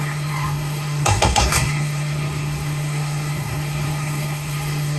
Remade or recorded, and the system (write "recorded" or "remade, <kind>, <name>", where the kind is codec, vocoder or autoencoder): remade, codec, SNAC